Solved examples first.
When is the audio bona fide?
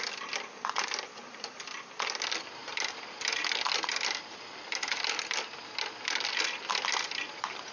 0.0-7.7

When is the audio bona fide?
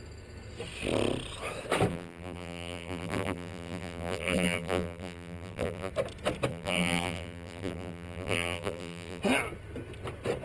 0.0-1.9; 5.9-6.5; 9.2-10.4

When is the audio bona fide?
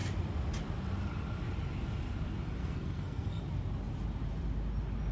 0.0-2.6; 3.4-5.1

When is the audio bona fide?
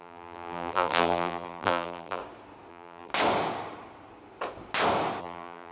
2.2-2.7; 3.1-5.2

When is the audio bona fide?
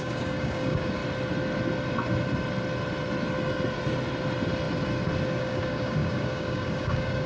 1.0-5.4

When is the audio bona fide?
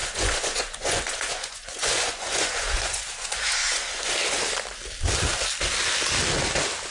4.1-6.9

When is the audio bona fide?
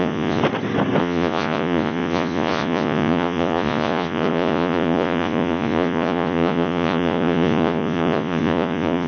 0.4-1.0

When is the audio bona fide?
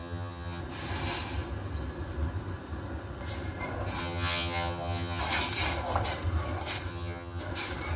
0.6-4.0; 5.2-6.9; 7.4-8.0